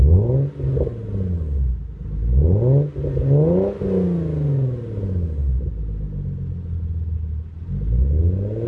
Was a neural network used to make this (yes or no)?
no